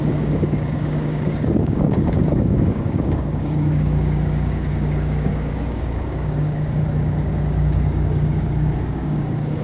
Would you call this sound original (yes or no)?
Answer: no